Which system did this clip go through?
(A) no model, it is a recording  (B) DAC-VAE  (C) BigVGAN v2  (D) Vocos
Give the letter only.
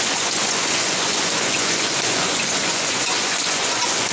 D